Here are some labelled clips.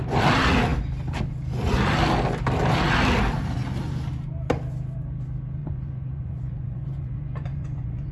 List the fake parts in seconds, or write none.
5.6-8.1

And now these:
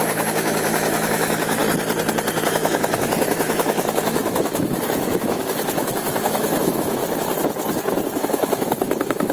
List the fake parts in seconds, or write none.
0.0-1.6; 2.5-7.0; 8.2-9.3

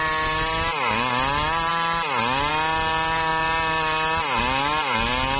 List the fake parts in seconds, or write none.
none

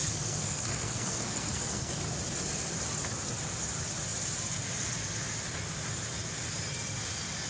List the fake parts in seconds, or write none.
0.0-2.0

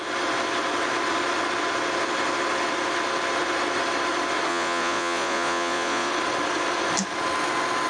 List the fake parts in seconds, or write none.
4.5-6.1

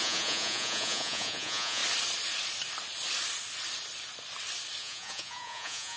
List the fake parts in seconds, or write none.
0.0-1.8; 4.8-6.0

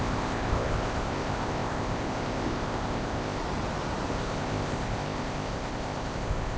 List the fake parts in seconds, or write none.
0.0-3.4; 4.1-6.6

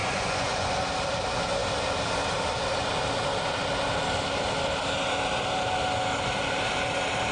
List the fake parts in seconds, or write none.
0.0-0.7